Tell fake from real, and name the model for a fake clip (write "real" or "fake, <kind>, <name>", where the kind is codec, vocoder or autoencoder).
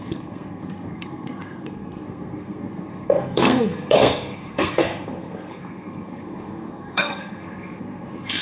fake, codec, SNAC